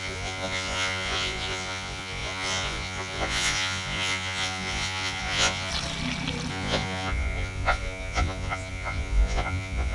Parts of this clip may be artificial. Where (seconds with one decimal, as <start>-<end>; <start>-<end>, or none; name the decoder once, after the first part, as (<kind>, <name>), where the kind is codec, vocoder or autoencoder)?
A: 0.0-5.7 (vocoder, Vocos); 6.5-9.9